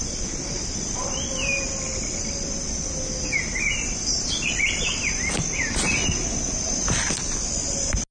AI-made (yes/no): no